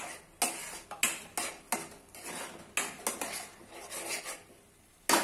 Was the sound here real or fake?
real